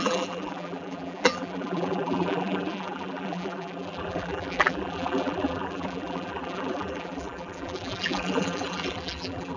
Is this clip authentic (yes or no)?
no